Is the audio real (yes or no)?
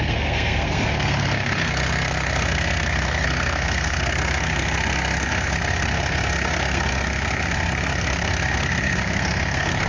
no